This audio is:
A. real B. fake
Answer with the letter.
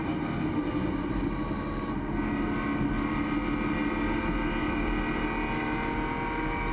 A